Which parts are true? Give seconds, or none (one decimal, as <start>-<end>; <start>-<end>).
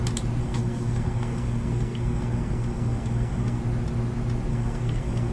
0.0-0.4; 3.6-4.5